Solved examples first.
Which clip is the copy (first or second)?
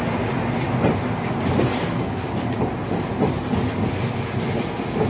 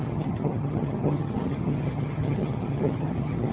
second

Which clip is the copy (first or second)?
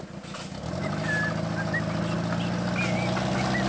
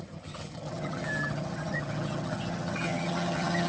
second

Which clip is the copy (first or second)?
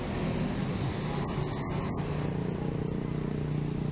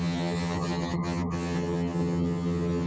second